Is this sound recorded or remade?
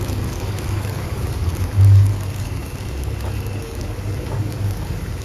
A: remade